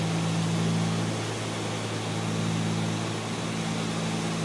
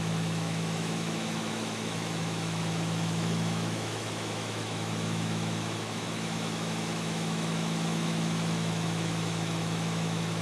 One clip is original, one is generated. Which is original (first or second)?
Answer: first